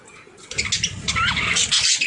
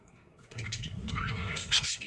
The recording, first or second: first